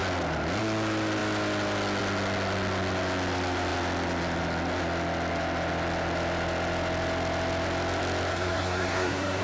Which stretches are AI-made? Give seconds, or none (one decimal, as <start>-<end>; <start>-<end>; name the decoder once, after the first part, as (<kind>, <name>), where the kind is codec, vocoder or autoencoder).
8.3-9.4 (codec, SNAC)